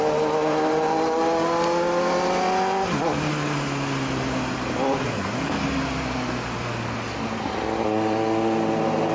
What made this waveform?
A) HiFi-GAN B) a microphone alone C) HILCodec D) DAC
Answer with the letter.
B